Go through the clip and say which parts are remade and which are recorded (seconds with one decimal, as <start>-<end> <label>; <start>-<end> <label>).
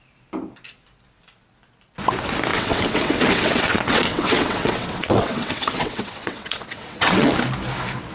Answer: 0.0-2.5 recorded; 2.5-7.3 remade; 7.3-8.1 recorded